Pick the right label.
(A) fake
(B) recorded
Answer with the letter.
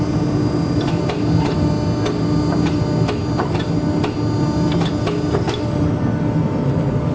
B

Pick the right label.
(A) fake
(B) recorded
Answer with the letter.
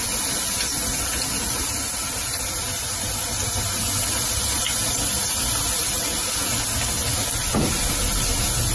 B